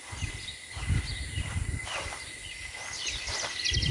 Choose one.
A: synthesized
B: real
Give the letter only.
B